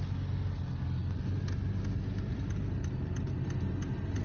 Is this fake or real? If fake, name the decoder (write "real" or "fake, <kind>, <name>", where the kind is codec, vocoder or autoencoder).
real